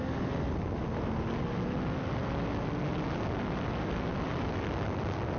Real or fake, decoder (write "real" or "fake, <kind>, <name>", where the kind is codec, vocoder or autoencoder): real